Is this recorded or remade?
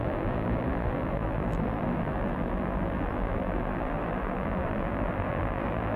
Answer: remade